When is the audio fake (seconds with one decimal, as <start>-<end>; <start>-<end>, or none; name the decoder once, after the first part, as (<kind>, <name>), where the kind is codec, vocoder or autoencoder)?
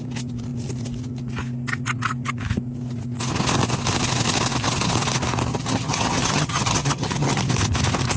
5.5-7.4 (vocoder, HiFi-GAN)